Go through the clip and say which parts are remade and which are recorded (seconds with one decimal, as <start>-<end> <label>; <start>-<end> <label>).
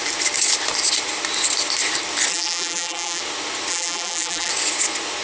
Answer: 0.0-2.3 recorded; 2.3-3.2 remade; 3.2-3.7 recorded; 3.7-4.5 remade; 4.5-5.2 recorded